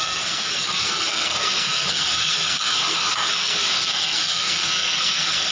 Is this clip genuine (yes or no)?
no